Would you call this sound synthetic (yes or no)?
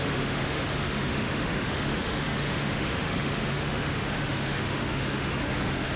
yes